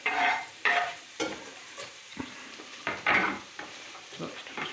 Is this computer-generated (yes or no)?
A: yes